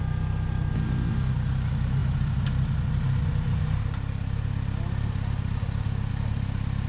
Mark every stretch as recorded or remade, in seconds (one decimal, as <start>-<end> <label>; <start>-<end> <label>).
0.0-6.9 recorded